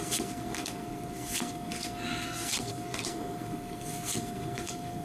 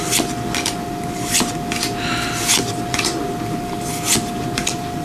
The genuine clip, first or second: second